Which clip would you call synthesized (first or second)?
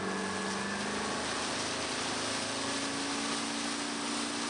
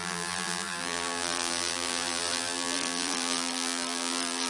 second